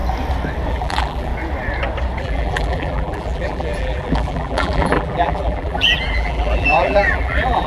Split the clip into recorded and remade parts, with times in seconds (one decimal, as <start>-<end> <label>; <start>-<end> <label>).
0.0-0.7 recorded; 0.7-1.3 remade; 1.3-2.2 recorded; 2.2-7.7 remade